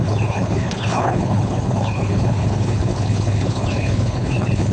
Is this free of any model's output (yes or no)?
no